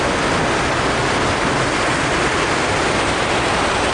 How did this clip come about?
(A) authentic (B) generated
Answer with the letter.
A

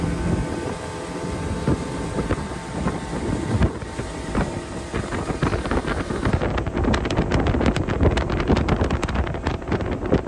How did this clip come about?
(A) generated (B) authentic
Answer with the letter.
B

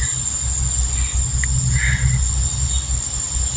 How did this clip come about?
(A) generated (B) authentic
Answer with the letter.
B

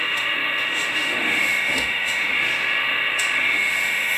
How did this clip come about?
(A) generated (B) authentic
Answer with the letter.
A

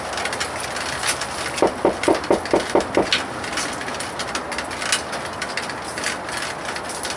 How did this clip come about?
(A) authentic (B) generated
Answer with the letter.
A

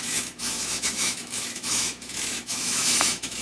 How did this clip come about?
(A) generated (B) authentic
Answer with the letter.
A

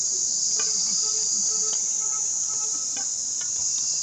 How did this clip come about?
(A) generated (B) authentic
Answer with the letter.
B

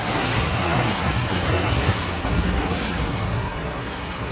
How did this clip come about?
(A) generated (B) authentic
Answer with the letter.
A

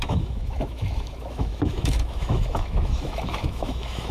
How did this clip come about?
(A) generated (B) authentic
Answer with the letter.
A